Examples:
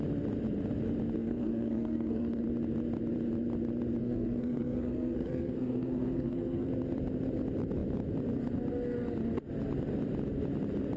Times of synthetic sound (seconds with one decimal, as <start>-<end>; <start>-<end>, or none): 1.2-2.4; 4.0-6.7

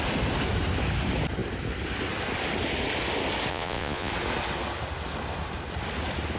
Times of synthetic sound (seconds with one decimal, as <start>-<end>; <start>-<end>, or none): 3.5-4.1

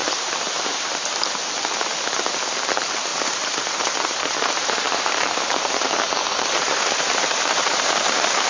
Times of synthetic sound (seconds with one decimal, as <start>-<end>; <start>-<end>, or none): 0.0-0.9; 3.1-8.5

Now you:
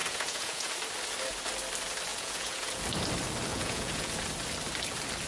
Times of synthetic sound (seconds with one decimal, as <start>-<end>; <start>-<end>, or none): 0.0-0.7; 2.1-2.8; 3.5-4.2